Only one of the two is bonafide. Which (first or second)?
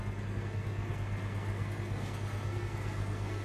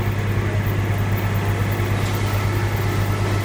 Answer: second